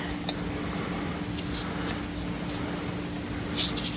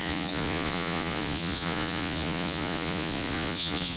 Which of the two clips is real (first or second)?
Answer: first